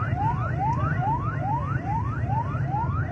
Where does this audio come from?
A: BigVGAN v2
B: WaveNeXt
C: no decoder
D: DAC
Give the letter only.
A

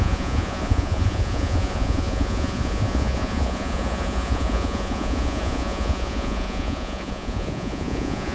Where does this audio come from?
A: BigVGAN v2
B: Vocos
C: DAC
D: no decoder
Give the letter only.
B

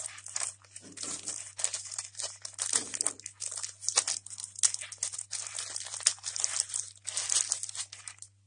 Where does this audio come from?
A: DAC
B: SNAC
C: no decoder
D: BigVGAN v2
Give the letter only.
C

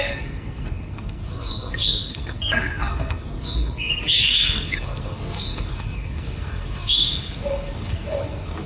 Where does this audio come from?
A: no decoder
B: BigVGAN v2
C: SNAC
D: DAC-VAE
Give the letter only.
C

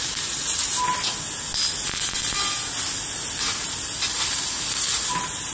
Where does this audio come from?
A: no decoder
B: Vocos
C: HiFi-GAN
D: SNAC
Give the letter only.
A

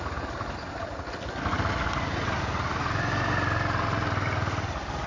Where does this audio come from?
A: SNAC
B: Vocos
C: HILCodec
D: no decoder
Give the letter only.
D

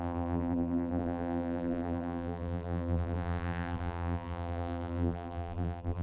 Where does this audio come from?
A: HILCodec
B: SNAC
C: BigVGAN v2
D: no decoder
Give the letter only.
C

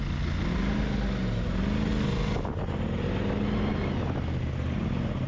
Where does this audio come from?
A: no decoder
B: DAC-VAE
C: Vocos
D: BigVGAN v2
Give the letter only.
A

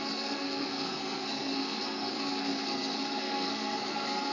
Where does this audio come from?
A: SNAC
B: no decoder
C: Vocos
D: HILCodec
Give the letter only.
A